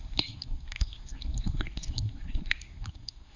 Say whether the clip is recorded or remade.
remade